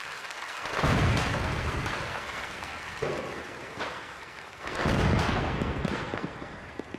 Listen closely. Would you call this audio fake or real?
fake